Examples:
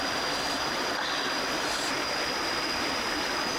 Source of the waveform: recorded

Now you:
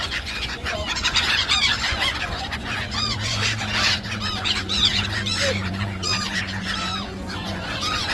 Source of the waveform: remade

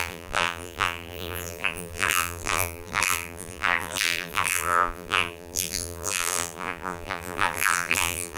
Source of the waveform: remade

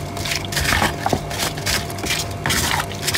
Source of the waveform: recorded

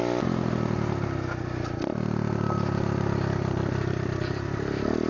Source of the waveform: recorded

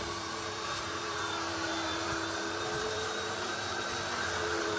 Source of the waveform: remade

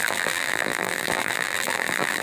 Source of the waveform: remade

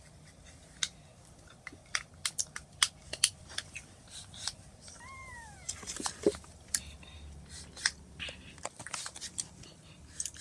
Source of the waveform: remade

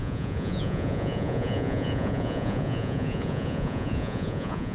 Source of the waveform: remade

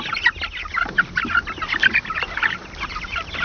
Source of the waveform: recorded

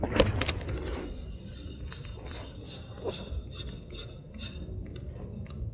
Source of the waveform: recorded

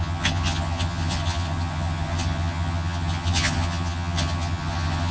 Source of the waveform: remade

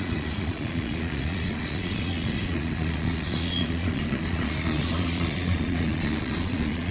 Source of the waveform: remade